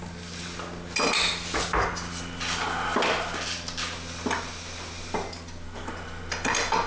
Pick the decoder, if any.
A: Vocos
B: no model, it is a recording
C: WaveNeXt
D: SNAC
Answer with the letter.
B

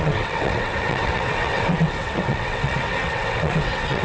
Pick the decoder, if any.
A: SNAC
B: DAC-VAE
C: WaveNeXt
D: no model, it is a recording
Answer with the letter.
C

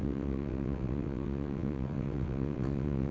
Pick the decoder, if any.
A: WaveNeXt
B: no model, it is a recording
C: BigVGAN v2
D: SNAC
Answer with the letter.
A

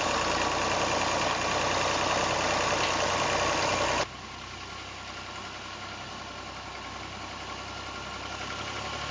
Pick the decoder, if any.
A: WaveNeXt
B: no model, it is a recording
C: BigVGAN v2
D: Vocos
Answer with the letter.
B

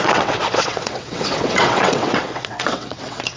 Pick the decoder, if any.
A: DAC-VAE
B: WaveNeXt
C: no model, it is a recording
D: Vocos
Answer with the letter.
B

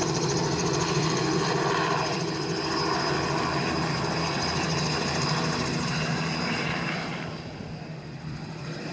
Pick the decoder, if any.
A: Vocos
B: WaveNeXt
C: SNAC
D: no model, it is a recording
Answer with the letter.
D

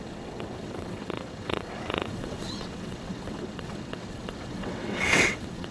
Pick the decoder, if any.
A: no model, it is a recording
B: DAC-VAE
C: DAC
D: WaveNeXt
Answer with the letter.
D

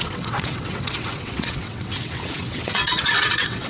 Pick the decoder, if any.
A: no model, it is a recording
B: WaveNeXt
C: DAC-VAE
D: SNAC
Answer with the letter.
B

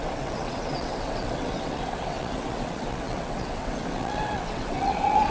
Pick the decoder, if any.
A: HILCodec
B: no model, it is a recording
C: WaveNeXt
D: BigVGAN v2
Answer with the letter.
C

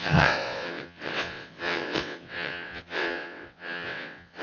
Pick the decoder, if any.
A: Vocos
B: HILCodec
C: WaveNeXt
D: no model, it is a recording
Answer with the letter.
C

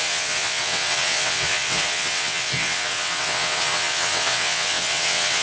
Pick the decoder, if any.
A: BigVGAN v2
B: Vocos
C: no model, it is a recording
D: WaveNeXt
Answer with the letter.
D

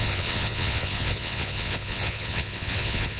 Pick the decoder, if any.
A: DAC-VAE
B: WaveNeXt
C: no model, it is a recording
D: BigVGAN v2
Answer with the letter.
B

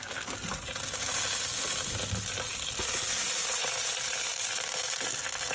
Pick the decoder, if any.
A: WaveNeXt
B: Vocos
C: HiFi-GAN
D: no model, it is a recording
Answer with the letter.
D